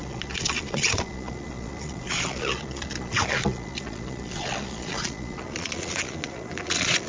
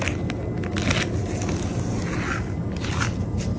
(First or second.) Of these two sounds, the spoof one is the first